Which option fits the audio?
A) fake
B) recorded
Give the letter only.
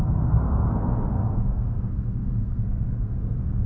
A